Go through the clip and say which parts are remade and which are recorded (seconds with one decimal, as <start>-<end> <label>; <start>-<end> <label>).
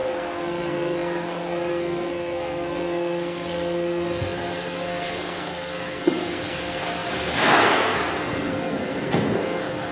0.0-9.9 remade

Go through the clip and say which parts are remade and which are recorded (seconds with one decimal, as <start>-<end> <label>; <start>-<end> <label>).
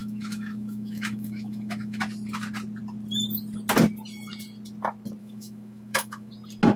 0.0-2.0 remade; 2.0-5.2 recorded; 5.2-6.3 remade; 6.3-6.8 recorded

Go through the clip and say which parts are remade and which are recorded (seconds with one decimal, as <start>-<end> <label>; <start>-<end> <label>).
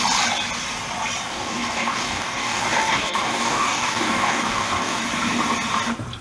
0.0-1.3 recorded; 1.3-5.0 remade; 5.0-6.2 recorded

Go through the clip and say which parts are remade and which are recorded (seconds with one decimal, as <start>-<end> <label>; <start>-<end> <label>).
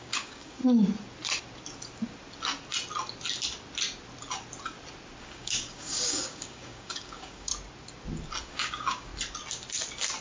0.0-0.6 remade; 0.6-5.2 recorded; 5.2-7.5 remade; 7.5-8.4 recorded; 8.4-9.1 remade; 9.1-10.2 recorded